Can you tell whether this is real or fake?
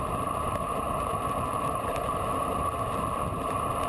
fake